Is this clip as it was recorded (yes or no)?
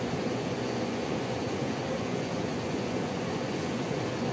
no